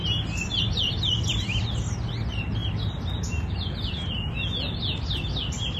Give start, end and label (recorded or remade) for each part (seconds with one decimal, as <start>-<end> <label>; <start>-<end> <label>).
0.0-5.8 recorded